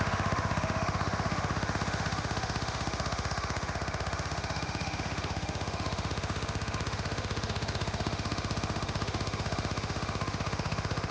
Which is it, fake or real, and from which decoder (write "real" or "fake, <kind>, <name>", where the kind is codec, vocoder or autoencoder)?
fake, autoencoder, DAC-VAE